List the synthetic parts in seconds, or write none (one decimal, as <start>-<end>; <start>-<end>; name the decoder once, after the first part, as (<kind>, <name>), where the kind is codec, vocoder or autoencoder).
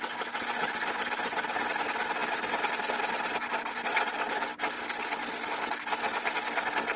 none